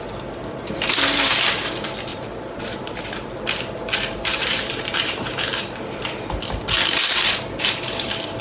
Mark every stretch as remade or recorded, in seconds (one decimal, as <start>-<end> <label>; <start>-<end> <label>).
0.0-2.1 recorded; 2.1-3.0 remade; 3.0-4.3 recorded; 4.3-4.9 remade; 4.9-8.4 recorded